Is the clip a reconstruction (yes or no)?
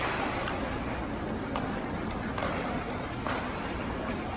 no